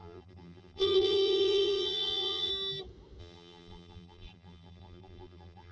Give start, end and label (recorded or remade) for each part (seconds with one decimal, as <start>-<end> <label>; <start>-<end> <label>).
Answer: 0.0-2.5 remade; 2.5-3.2 recorded; 3.2-5.7 remade